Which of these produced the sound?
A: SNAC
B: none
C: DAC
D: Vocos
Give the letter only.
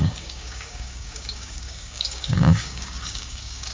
C